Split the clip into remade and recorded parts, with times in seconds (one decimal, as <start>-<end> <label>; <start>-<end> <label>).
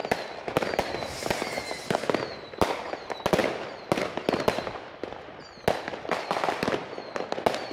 0.0-7.7 recorded